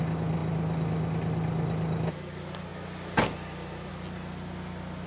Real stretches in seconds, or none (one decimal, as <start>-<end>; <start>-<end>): 0.0-5.1